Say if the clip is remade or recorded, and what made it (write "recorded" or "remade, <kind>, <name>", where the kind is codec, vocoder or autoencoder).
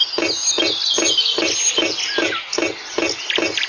recorded